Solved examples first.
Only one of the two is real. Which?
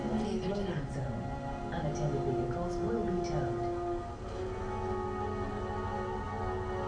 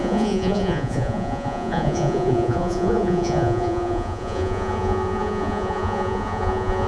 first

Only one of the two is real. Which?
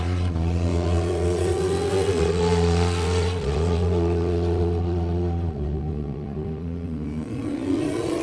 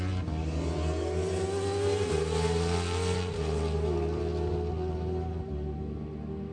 second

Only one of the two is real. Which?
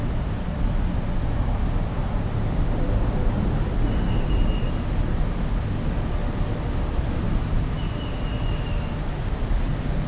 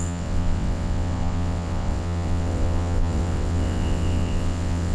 first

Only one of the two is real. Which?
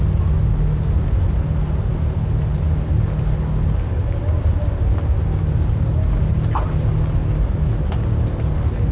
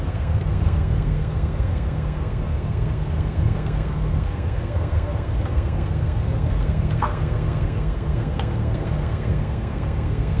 first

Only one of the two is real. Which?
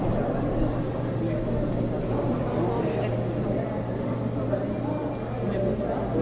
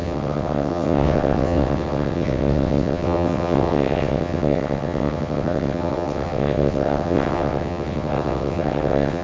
first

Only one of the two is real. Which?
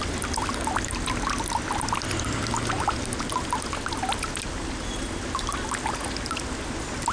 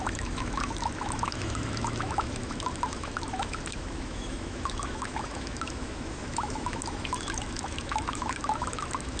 first